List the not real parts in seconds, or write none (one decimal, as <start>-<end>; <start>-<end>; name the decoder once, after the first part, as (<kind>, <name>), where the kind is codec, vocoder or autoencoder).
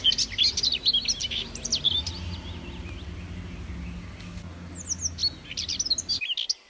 none